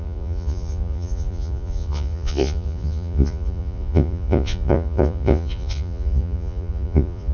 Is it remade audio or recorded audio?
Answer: remade